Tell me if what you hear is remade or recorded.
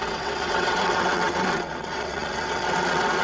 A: remade